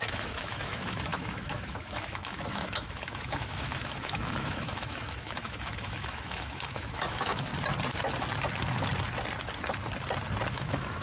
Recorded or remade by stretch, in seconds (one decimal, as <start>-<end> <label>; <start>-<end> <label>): 0.0-7.5 remade; 7.5-10.5 recorded; 10.5-11.0 remade